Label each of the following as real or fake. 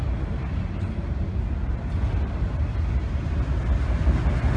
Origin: real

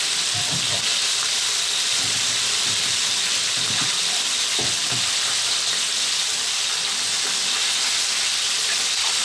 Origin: real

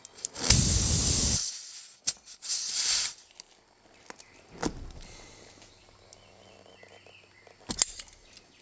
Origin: real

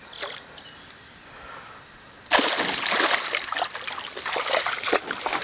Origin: real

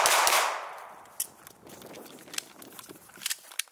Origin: real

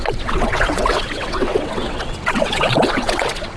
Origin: fake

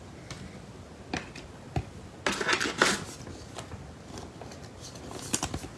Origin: real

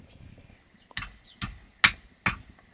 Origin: real